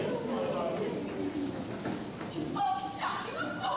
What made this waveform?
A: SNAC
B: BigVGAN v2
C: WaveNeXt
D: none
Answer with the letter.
D